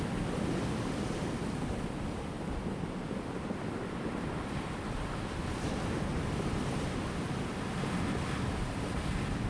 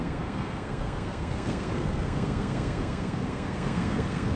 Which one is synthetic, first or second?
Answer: second